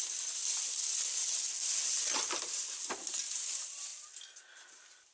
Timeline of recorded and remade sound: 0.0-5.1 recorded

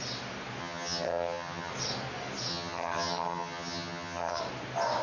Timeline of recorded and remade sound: 0.0-0.6 recorded; 0.6-1.7 remade; 1.7-2.5 recorded; 2.5-4.4 remade; 4.4-5.0 recorded

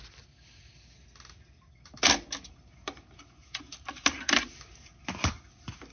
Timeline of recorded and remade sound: 0.0-3.4 recorded; 3.4-5.0 remade; 5.0-5.9 recorded

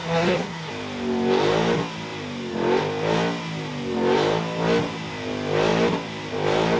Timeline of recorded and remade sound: 0.0-0.7 remade; 0.7-6.8 recorded

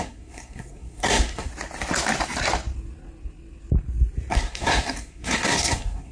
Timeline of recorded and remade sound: 0.0-1.5 remade; 1.5-4.3 recorded; 4.3-6.1 remade

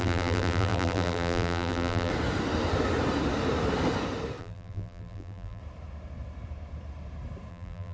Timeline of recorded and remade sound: 0.0-2.1 remade; 2.1-4.4 recorded; 4.4-5.6 remade; 5.6-7.5 recorded; 7.5-7.9 remade

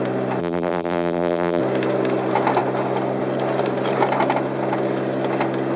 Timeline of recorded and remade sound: 0.0-0.4 recorded; 0.4-1.6 remade; 1.6-5.8 recorded

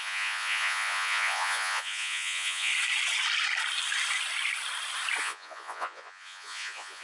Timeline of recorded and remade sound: 0.0-2.7 remade; 2.7-5.2 recorded; 5.2-7.0 remade